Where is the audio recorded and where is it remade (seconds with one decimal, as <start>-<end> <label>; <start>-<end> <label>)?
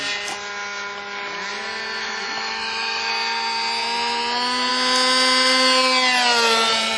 0.0-2.0 recorded; 2.0-3.1 remade; 3.1-7.0 recorded